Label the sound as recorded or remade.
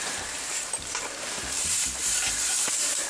remade